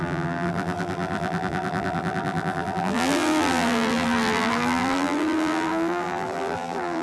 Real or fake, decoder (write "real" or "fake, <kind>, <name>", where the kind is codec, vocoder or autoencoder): fake, vocoder, BigVGAN v2